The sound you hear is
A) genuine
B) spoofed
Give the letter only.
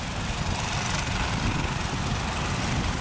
A